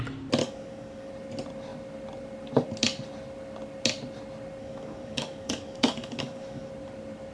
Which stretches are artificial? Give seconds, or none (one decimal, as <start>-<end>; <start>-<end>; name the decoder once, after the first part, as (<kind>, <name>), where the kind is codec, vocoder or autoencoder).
0.4-1.1 (codec, DAC); 4.6-6.7